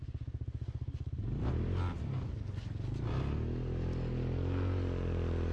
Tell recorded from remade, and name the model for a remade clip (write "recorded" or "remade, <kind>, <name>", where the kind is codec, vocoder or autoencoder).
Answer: recorded